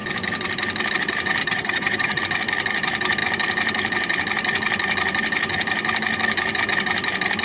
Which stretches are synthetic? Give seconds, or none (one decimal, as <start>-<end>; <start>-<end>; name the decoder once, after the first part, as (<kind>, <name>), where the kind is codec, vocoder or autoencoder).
1.4-2.2 (vocoder, HiFi-GAN)